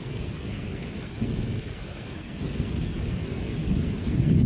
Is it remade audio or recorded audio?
remade